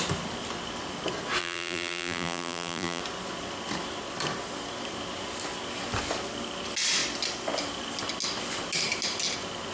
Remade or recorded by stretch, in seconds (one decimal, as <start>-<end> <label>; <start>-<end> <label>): 0.0-1.4 recorded; 1.4-3.0 remade; 3.0-9.7 recorded